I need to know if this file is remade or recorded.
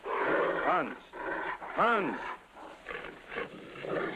remade